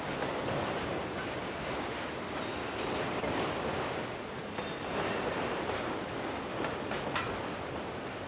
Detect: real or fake real